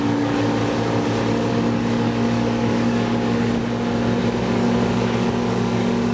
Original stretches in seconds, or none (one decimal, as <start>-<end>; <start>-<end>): 0.6-1.5; 3.6-4.2